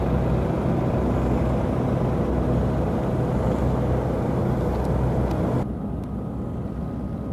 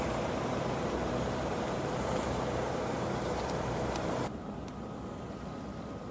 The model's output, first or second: second